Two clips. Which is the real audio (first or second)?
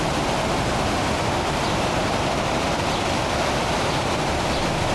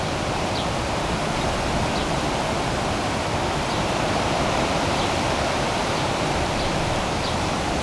first